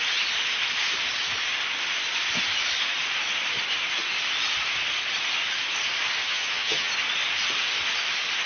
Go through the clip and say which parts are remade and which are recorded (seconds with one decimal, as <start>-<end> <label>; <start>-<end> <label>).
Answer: 0.0-6.2 recorded; 6.2-6.9 remade; 6.9-8.5 recorded

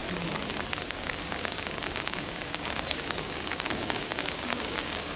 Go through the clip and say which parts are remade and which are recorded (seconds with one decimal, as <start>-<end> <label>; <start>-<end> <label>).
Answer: 0.0-0.9 recorded; 0.9-5.2 remade

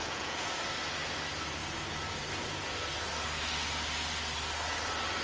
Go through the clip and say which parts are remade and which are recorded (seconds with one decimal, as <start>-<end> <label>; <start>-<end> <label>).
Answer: 0.0-0.6 remade; 0.6-5.2 recorded

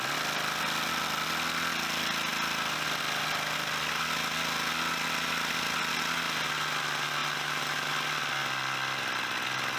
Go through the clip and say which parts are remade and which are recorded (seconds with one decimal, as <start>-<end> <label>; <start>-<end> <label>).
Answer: 0.0-7.2 recorded; 7.2-7.9 remade; 7.9-9.8 recorded

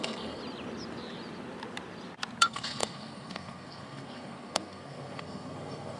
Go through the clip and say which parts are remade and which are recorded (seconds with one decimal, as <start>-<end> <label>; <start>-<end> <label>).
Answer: 0.0-0.4 remade; 0.4-2.4 recorded; 2.4-6.0 remade

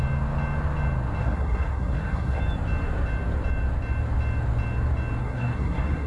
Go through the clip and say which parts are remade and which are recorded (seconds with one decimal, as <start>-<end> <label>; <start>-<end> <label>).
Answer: 0.0-1.2 recorded; 1.2-2.4 remade; 2.4-5.2 recorded; 5.2-6.1 remade

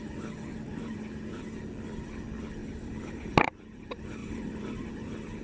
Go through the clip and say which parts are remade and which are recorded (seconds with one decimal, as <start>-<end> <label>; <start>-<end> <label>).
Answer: 0.0-0.5 recorded; 0.5-1.5 remade; 1.5-2.6 recorded; 2.6-3.6 remade; 3.6-4.2 recorded; 4.2-4.9 remade; 4.9-5.4 recorded